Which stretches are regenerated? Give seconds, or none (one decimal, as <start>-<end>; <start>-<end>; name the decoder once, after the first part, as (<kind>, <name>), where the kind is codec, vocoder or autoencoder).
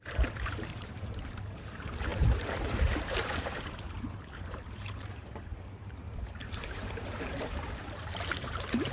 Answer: 0.0-8.9 (vocoder, BigVGAN v2)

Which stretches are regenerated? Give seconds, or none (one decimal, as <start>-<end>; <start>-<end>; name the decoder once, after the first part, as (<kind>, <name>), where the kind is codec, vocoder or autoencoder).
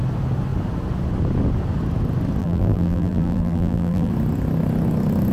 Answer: 2.4-4.1 (vocoder, BigVGAN v2)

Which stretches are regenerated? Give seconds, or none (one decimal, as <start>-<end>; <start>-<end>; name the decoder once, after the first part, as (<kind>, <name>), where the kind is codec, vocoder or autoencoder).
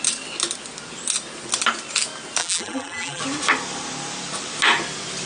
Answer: 2.4-3.2 (vocoder, BigVGAN v2)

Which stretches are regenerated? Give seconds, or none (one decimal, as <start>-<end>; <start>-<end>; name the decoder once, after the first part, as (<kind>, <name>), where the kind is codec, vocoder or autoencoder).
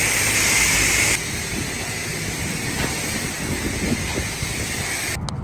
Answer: none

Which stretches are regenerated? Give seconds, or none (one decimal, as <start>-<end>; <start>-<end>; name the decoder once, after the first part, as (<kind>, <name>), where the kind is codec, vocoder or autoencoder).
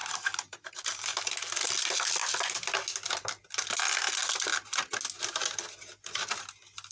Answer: 0.0-1.2 (vocoder, BigVGAN v2)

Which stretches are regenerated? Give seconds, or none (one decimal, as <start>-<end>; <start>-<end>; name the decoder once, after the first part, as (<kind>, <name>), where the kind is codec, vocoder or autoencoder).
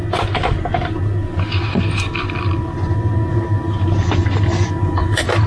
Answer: none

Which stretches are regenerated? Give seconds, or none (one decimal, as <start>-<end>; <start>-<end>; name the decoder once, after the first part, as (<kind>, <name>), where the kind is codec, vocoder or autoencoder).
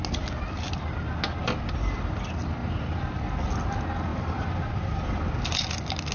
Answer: 4.1-5.0 (vocoder, BigVGAN v2)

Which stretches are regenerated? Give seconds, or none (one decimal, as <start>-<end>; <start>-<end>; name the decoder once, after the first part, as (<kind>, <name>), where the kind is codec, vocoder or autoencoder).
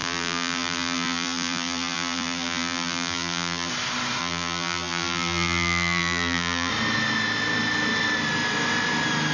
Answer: 0.0-3.7 (vocoder, BigVGAN v2); 4.2-6.7